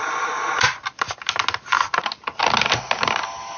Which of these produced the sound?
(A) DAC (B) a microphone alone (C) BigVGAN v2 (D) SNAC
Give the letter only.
B